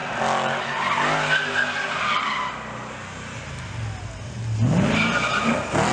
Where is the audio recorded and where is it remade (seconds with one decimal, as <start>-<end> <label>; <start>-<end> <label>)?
0.0-5.9 recorded